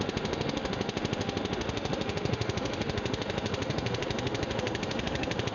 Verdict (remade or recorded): remade